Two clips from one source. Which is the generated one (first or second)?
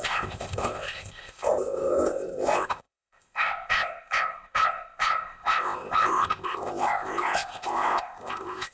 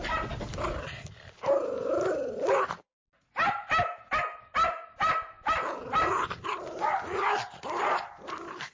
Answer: first